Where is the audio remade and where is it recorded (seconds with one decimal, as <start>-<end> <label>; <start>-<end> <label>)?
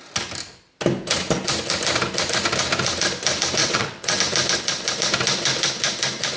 0.0-3.6 recorded; 3.6-4.2 remade; 4.2-6.4 recorded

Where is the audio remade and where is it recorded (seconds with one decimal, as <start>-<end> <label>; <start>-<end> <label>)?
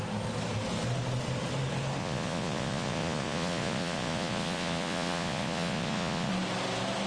0.0-2.0 recorded; 2.0-6.3 remade; 6.3-7.1 recorded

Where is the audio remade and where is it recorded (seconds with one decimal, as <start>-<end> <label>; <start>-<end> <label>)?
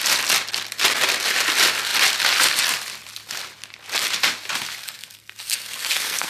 0.0-4.8 recorded; 4.8-6.3 remade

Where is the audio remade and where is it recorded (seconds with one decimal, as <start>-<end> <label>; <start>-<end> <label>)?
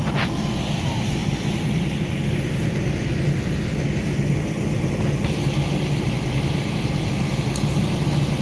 0.0-1.2 recorded; 1.2-1.9 remade; 1.9-8.4 recorded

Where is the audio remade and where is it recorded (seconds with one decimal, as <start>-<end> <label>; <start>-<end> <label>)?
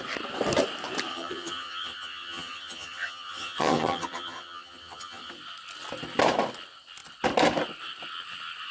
0.0-1.1 recorded; 1.1-5.3 remade; 5.3-8.7 recorded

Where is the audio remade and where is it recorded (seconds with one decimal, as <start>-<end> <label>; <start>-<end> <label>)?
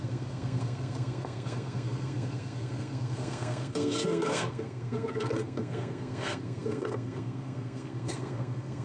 0.0-8.8 remade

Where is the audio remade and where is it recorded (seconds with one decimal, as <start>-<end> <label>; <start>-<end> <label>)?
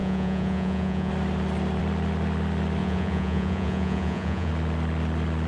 0.0-1.1 remade; 1.1-2.8 recorded; 2.8-4.5 remade; 4.5-5.5 recorded